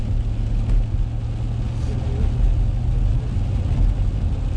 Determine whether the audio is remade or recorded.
recorded